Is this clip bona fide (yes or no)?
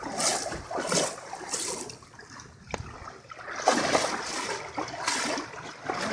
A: yes